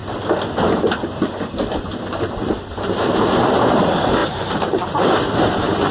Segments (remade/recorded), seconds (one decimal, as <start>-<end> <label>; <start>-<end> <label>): 0.0-4.2 recorded; 4.2-5.9 remade